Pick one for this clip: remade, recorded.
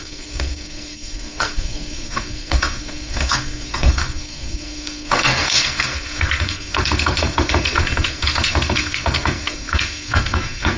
remade